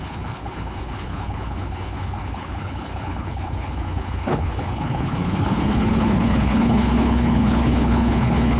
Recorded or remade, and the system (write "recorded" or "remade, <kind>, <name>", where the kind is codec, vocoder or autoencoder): remade, codec, HILCodec